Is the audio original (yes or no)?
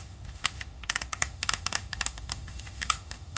no